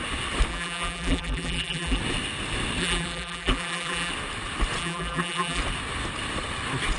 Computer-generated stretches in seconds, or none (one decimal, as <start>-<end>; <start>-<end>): 0.5-2.0; 2.8-4.1; 4.8-5.6